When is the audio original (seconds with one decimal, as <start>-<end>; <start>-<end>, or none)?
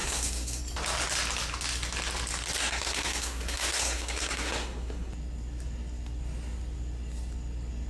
0.6-2.6; 5.1-7.9